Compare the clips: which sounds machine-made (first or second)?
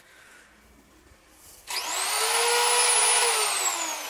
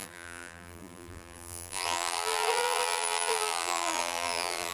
second